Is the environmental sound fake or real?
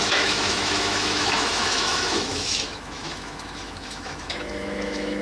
fake